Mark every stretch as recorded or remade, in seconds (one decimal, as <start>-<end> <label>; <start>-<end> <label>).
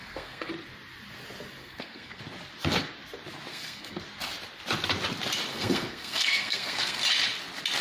0.0-0.5 remade; 0.5-1.6 recorded; 1.6-2.2 remade; 2.2-3.5 recorded; 3.5-4.0 remade; 4.0-5.5 recorded; 5.5-7.0 remade; 7.0-7.8 recorded